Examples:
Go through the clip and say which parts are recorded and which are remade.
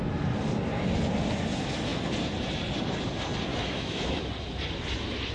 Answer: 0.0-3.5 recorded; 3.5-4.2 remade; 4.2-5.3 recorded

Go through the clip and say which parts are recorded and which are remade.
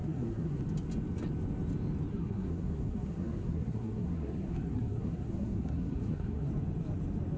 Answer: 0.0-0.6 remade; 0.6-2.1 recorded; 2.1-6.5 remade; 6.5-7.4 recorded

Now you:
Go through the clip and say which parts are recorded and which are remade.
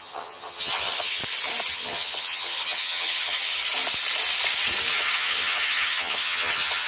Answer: 0.0-1.2 remade; 1.2-1.7 recorded; 1.7-3.6 remade; 3.6-4.9 recorded; 4.9-6.9 remade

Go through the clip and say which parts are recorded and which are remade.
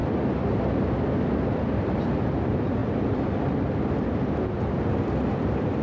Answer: 0.0-1.5 recorded; 1.5-5.8 remade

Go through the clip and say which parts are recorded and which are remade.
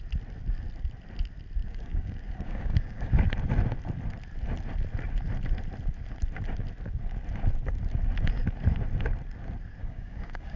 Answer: 0.0-1.6 recorded; 1.6-3.1 remade; 3.1-9.8 recorded; 9.8-10.6 remade